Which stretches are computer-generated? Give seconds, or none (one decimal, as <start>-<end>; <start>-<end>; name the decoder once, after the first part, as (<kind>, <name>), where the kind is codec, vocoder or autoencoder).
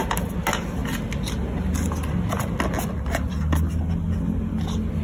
none